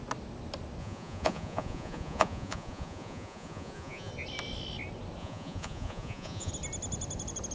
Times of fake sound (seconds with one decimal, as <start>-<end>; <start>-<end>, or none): 0.8-4.1; 5.2-6.5